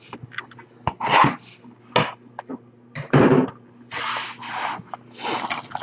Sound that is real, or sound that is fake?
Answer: real